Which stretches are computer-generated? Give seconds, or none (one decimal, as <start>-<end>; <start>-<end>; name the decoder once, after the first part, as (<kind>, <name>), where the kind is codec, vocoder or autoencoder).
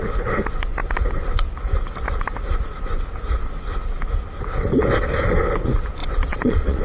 6.0-6.8 (vocoder, Vocos)